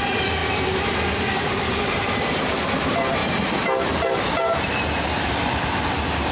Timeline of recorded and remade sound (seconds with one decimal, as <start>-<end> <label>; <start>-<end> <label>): 0.0-6.3 recorded